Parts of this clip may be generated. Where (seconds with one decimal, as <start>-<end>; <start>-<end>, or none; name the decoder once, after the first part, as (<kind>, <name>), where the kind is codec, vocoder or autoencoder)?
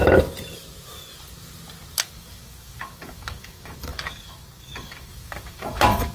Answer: 1.9-6.1 (codec, DAC)